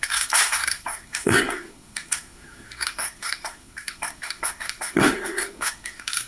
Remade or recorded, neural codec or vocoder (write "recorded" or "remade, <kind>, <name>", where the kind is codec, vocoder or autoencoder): remade, codec, SNAC